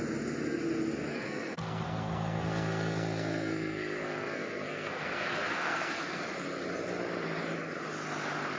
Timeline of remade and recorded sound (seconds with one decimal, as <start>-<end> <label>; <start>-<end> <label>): 0.0-1.1 recorded; 1.1-6.2 remade; 6.2-8.6 recorded